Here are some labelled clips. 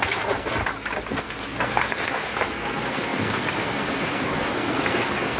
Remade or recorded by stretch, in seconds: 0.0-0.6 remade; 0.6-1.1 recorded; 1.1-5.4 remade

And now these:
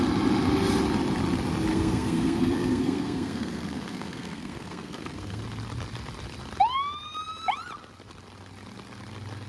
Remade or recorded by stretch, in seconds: 0.0-1.7 recorded; 1.7-5.4 remade; 5.4-9.5 recorded

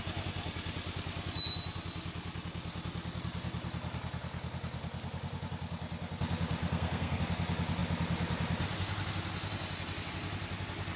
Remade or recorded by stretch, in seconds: 0.0-6.6 recorded; 6.6-7.2 remade; 7.2-11.0 recorded

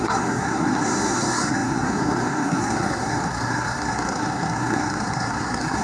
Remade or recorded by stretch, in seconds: 0.0-5.8 remade